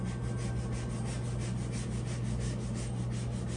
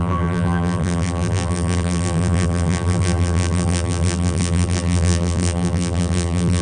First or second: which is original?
first